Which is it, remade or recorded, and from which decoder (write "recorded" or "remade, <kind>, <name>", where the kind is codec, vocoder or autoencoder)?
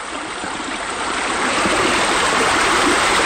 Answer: remade, vocoder, BigVGAN v2